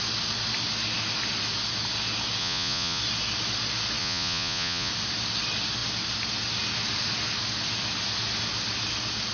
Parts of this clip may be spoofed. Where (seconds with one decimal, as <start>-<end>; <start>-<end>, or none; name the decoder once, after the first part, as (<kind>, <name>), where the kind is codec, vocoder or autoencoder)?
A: 2.4-3.0 (vocoder, Vocos); 4.0-4.9